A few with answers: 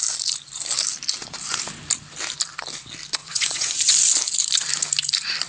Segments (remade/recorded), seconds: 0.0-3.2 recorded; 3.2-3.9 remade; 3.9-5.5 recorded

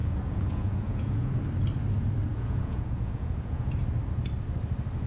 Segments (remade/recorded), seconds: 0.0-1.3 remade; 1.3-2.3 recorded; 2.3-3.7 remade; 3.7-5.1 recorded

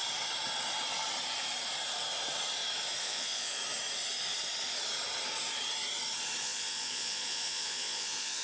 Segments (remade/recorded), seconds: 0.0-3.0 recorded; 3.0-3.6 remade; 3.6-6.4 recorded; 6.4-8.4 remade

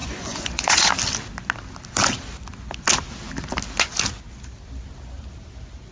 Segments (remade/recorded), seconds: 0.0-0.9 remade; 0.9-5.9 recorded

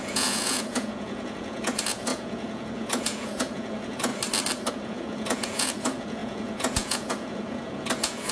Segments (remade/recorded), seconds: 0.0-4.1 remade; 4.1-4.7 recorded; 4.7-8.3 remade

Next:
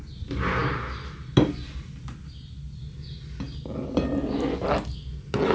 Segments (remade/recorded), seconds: 0.0-5.5 recorded